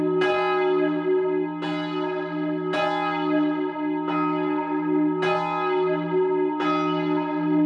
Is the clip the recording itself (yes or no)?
yes